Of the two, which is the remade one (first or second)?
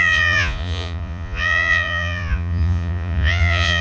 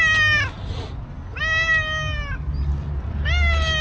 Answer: first